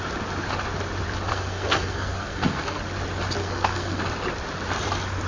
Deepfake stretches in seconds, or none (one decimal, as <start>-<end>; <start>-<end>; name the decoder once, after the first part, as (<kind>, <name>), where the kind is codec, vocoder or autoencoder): 1.3-2.8 (codec, SNAC); 3.4-4.0

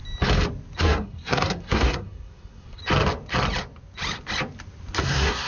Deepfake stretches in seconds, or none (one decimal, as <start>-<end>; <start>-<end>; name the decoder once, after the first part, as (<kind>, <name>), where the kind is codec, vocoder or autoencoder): 0.8-2.8 (codec, SNAC); 5.0-5.5

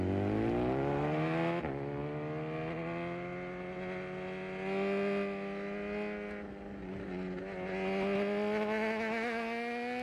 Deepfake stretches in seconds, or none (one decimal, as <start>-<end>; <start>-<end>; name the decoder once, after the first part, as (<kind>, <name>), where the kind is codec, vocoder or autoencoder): none

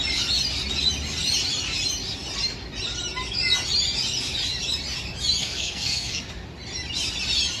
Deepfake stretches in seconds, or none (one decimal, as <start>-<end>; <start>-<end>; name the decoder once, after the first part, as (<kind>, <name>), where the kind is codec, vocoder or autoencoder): 5.4-6.2 (codec, SNAC)

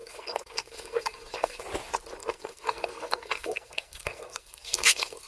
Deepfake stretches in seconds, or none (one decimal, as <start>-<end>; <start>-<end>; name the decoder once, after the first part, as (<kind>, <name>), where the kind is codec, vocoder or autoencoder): 0.0-1.6 (codec, SNAC); 2.2-5.3

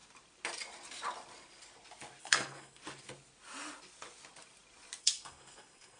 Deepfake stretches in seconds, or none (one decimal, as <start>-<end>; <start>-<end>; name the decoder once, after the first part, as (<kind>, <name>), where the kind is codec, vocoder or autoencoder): 2.2-2.8 (codec, SNAC); 5.0-6.0